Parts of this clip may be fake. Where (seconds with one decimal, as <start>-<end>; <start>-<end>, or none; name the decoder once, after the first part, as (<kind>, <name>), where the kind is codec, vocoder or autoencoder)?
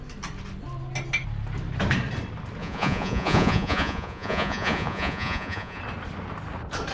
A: 2.6-5.8 (vocoder, Vocos)